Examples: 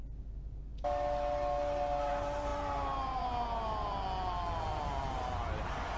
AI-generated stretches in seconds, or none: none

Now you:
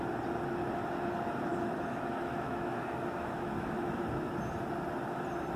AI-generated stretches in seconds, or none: 1.5-4.3 (autoencoder, DAC-VAE)

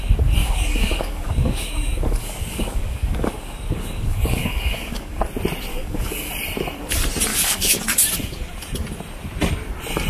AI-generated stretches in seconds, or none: 0.4-5.2 (codec, DAC); 5.7-6.3; 7.3-7.8

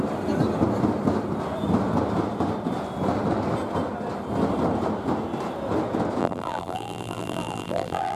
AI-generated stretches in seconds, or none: 6.2-8.2 (vocoder, BigVGAN v2)

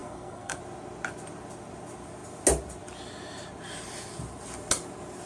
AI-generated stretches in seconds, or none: 0.0-0.6 (codec, SNAC)